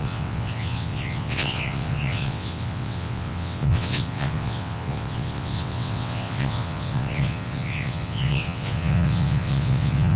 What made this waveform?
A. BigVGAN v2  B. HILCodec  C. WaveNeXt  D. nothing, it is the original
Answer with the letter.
C